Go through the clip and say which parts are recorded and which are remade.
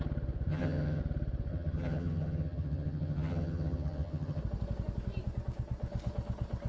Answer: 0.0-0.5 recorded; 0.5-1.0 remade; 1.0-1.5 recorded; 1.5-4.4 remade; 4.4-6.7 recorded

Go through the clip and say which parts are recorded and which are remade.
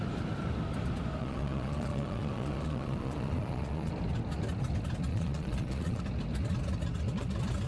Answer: 0.0-1.2 recorded; 1.2-3.9 remade; 3.9-5.1 recorded; 5.1-6.0 remade; 6.0-7.7 recorded